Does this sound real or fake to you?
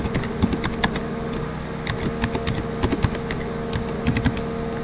real